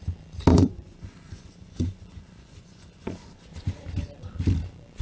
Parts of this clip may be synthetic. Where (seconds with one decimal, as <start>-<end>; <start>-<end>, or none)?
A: 0.5-3.5